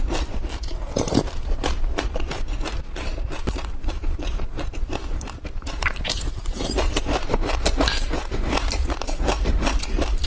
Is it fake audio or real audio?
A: fake